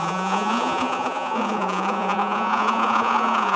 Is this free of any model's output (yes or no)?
no